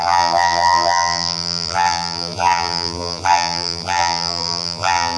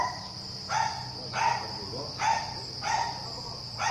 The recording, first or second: second